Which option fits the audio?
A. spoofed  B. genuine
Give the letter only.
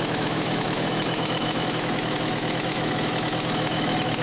A